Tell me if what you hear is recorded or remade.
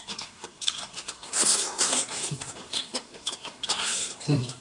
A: remade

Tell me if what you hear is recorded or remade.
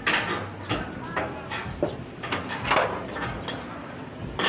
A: recorded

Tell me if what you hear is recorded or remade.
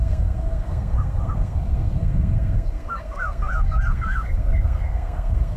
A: remade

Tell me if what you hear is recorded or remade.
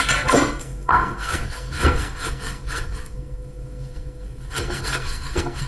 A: remade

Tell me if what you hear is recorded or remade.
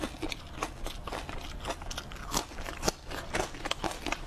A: recorded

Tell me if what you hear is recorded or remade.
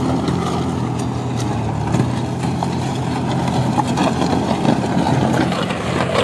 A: recorded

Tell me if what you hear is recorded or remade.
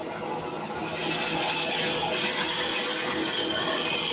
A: recorded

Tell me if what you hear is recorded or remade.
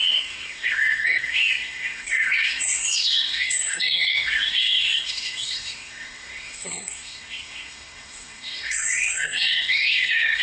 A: remade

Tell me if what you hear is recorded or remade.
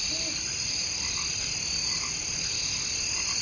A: recorded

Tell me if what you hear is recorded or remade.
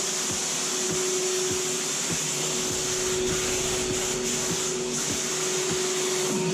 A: recorded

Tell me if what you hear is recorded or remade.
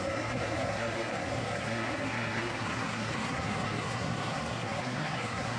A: remade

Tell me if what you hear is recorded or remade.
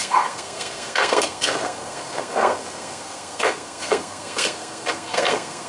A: remade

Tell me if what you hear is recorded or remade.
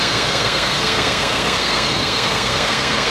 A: remade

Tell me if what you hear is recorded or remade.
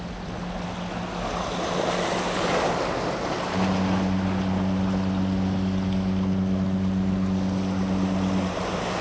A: recorded